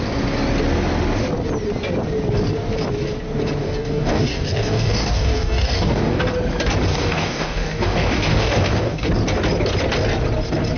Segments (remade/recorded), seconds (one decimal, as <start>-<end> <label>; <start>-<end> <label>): 0.0-3.6 recorded; 3.6-6.2 remade; 6.2-6.9 recorded; 6.9-9.1 remade; 9.1-10.8 recorded